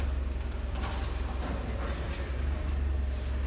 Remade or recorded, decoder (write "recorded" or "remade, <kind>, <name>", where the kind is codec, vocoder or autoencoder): recorded